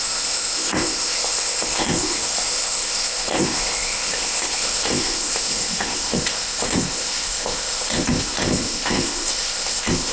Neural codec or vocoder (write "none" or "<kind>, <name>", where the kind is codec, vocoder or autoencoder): codec, ZipCodec